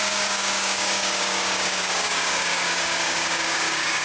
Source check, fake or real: fake